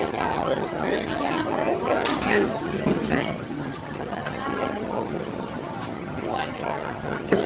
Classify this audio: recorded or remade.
remade